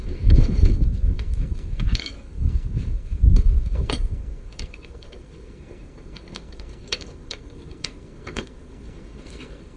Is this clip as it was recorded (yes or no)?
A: no